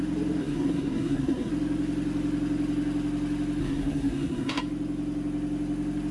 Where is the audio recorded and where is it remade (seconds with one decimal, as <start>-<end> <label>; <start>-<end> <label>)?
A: 0.0-0.4 recorded; 0.4-1.5 remade; 1.5-3.6 recorded; 3.6-4.6 remade; 4.6-6.1 recorded